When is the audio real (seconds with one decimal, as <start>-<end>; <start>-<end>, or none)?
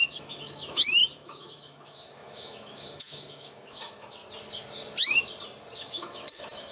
4.2-5.8